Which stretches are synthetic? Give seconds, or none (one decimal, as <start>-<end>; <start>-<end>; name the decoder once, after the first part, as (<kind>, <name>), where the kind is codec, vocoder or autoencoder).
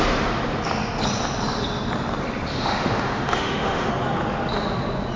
2.5-3.9 (autoencoder, DAC-VAE)